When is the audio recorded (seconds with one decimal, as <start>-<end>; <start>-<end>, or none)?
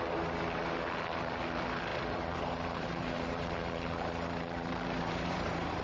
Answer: 0.0-1.9